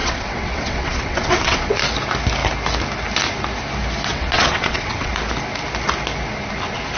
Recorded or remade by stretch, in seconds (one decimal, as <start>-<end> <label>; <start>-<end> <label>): 0.0-1.8 remade; 1.8-4.1 recorded; 4.1-5.1 remade; 5.1-7.0 recorded